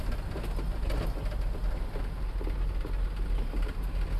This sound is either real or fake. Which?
real